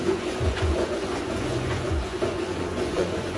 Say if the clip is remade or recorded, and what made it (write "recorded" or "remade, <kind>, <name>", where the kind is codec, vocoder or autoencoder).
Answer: remade, vocoder, Vocos